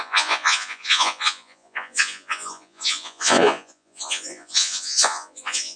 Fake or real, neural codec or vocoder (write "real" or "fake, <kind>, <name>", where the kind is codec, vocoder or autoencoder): fake, vocoder, Vocos